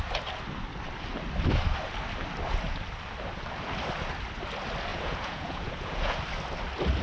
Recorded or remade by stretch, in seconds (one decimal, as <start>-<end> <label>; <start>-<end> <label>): 0.0-4.9 recorded; 4.9-6.2 remade; 6.2-7.0 recorded